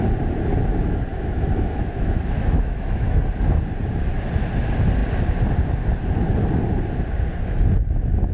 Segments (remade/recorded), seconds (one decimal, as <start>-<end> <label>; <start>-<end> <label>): 0.0-1.1 recorded; 1.1-3.2 remade; 3.2-8.3 recorded